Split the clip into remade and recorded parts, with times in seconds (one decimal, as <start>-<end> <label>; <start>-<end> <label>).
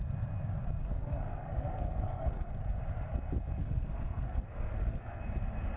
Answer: 0.0-0.8 recorded; 0.8-2.5 remade; 2.5-3.6 recorded; 3.6-5.2 remade; 5.2-5.8 recorded